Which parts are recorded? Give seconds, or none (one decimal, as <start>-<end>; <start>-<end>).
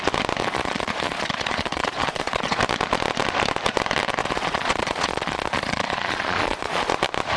0.0-0.4; 2.6-4.2; 6.9-7.4